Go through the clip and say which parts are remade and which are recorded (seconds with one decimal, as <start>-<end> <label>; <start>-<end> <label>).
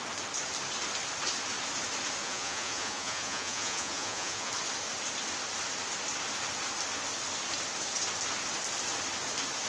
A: 0.0-2.2 recorded; 2.2-4.5 remade; 4.5-9.7 recorded